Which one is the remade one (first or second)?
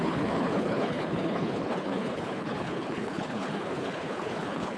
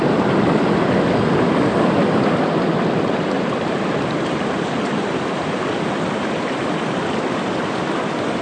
first